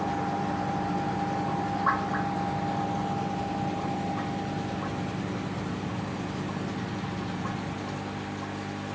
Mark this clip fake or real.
real